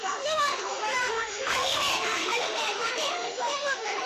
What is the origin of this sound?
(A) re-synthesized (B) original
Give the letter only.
A